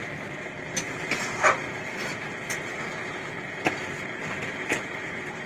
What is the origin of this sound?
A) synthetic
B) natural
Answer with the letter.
B